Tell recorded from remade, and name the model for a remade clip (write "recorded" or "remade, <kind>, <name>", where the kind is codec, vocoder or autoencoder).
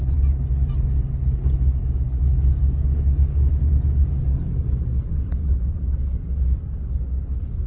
recorded